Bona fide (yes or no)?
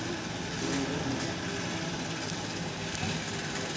yes